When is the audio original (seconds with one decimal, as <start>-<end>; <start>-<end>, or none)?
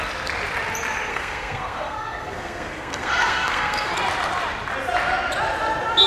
0.0-1.1; 3.9-6.1